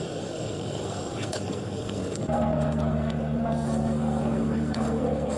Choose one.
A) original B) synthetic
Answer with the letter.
B